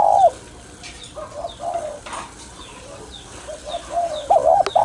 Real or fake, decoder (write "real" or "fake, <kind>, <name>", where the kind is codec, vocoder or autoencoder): real